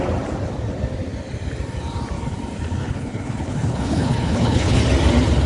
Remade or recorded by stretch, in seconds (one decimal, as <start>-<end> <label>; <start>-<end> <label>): 0.0-2.8 recorded; 2.8-4.8 remade; 4.8-5.5 recorded